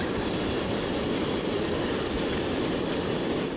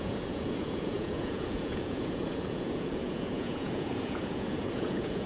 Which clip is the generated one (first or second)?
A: second